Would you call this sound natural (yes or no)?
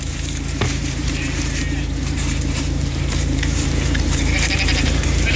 no